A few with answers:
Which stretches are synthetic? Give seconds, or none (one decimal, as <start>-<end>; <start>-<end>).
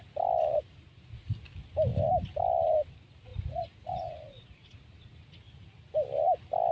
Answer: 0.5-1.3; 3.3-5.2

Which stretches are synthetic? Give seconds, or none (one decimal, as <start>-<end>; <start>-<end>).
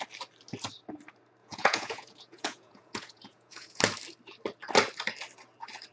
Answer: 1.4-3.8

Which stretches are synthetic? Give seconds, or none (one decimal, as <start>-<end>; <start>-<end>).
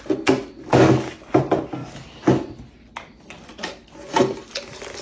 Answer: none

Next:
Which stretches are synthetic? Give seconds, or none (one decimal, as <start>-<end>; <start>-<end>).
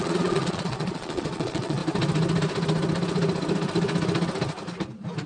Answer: 0.0-1.8